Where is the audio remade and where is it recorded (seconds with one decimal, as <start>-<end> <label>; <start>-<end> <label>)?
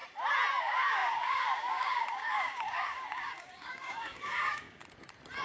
0.0-0.6 recorded; 0.6-4.8 remade; 4.8-5.4 recorded